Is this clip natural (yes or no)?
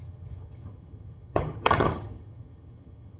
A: no